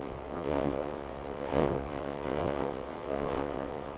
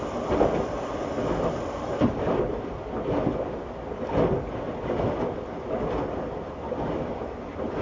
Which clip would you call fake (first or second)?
first